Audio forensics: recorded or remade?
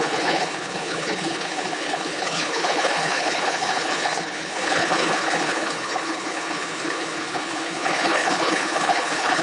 remade